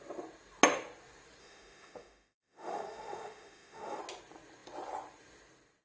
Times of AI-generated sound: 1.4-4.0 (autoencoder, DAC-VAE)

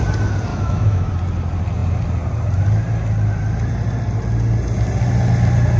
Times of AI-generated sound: 0.5-1.1 (autoencoder, DAC-VAE)